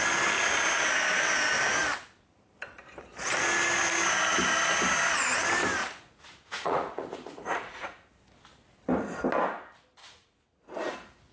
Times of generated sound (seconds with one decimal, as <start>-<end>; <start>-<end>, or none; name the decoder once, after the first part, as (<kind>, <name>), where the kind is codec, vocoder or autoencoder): 5.8-8.1 (vocoder, Vocos); 10.0-10.9